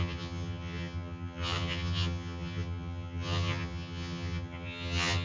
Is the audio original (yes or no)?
no